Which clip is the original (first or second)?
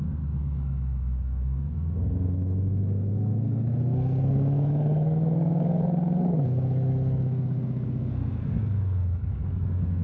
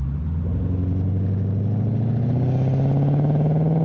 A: second